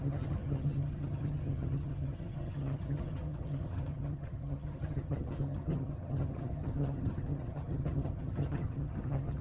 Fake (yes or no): yes